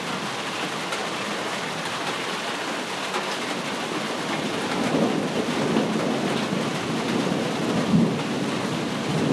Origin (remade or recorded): recorded